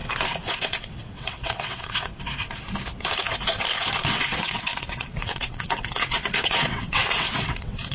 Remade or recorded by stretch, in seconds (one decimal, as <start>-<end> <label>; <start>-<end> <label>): 0.0-0.5 recorded; 0.5-2.1 remade; 2.1-4.1 recorded; 4.1-7.9 remade

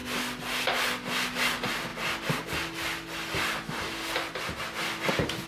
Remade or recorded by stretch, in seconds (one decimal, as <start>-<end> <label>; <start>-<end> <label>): 0.0-5.5 recorded

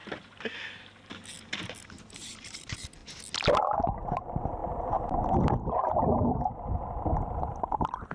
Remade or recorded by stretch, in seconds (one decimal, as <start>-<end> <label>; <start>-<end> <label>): 0.0-2.0 recorded; 2.0-3.0 remade; 3.0-3.8 recorded; 3.8-4.6 remade; 4.6-7.4 recorded; 7.4-8.1 remade

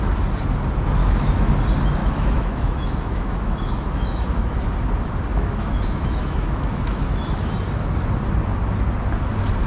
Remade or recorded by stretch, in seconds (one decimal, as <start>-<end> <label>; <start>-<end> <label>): 0.0-1.0 recorded; 1.0-1.5 remade; 1.5-2.0 recorded; 2.0-4.6 remade; 4.6-5.3 recorded; 5.3-7.5 remade; 7.5-9.7 recorded